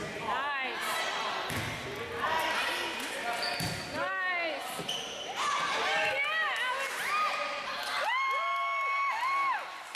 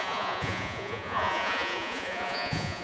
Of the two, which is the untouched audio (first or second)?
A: first